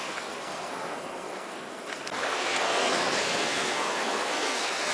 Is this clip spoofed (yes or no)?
yes